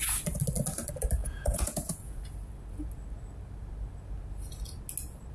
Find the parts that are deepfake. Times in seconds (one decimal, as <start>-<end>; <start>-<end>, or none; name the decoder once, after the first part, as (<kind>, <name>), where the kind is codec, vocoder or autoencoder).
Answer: 1.2-2.2 (vocoder, Vocos)